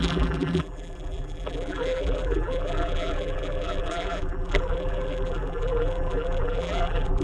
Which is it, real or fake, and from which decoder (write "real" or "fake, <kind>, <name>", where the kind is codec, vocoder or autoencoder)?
fake, vocoder, BigVGAN v2